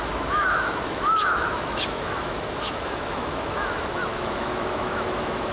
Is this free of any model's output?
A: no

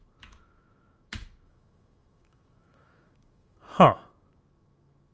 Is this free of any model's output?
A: no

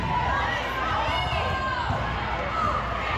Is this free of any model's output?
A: yes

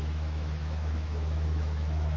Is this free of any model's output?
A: no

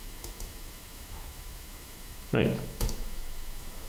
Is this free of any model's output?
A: no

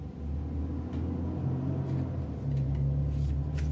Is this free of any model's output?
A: yes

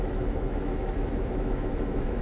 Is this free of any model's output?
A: no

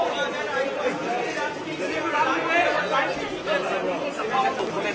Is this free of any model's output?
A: yes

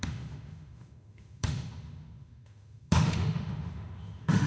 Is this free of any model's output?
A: no